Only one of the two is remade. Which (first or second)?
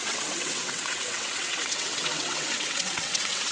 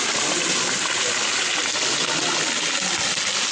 first